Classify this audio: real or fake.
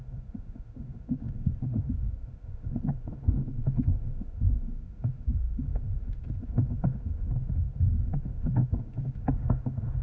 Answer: fake